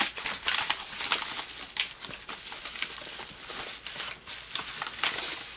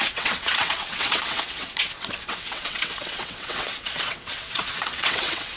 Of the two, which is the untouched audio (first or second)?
first